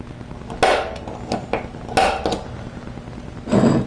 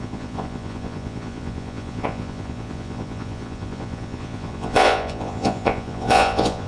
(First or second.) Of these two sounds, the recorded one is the first